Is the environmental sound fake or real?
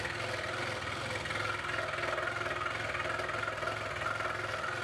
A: real